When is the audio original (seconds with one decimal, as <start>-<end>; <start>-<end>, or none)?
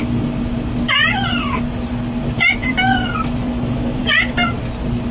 0.0-2.6; 4.5-5.1